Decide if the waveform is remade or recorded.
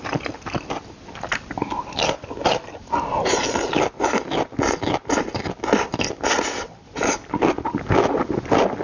recorded